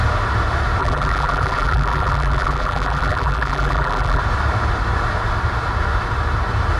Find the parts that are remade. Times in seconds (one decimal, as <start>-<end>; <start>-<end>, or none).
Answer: 0.8-4.2